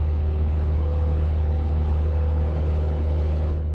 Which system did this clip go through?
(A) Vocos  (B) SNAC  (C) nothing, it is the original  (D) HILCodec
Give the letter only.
D